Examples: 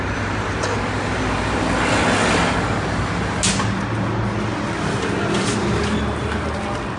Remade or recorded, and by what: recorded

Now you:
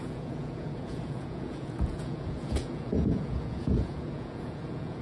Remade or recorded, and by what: remade, vocoder, Vocos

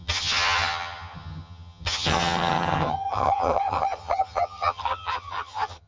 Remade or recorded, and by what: remade, vocoder, HiFi-GAN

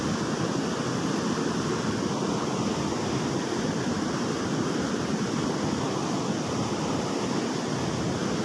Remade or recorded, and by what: recorded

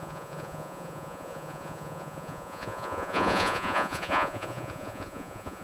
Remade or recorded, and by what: remade, vocoder, Vocos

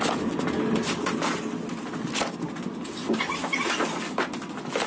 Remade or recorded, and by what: recorded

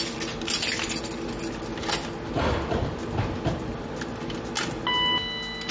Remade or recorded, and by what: recorded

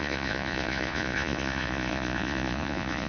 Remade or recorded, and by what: remade, vocoder, Vocos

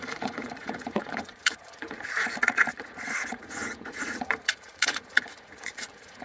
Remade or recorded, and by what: remade, vocoder, Vocos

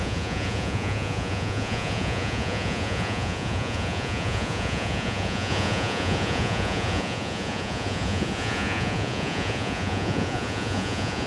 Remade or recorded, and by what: remade, vocoder, Vocos